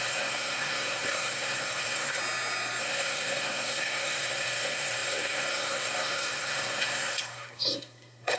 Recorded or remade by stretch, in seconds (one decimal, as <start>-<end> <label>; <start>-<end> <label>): 0.0-2.2 remade; 2.2-2.8 recorded; 2.8-8.4 remade